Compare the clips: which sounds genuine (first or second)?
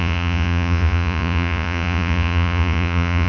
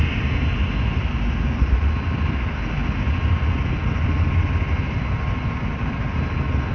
second